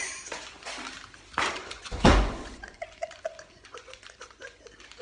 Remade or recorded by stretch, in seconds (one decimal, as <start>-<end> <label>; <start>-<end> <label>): 0.0-0.7 remade; 0.7-1.6 recorded; 1.6-4.6 remade; 4.6-5.0 recorded